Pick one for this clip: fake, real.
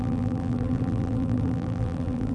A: fake